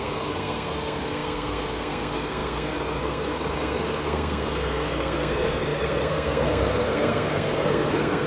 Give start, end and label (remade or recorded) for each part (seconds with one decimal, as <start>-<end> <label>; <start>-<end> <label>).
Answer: 0.0-8.3 remade